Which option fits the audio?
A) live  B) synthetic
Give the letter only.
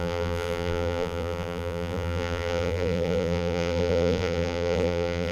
B